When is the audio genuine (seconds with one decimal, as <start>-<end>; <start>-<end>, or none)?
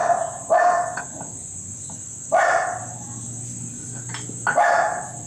0.0-5.3